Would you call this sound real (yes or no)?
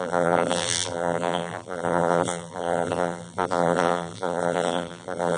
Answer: no